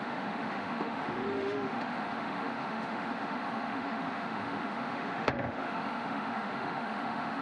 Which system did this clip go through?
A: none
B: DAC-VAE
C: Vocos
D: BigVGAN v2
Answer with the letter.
B